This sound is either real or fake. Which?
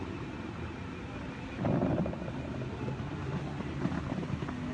real